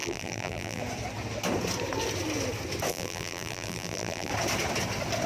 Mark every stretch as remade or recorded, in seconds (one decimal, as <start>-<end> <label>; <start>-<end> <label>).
0.0-0.8 remade; 0.8-2.9 recorded; 2.9-4.3 remade; 4.3-5.3 recorded